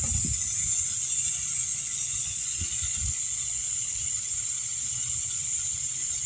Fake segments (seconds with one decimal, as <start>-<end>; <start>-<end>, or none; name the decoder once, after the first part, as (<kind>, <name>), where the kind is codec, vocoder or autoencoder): 1.6-3.9 (vocoder, Vocos)